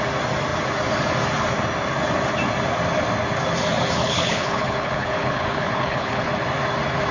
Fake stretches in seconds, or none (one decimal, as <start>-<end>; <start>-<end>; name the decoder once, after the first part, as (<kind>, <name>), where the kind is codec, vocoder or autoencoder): 4.0-6.3 (codec, HILCodec)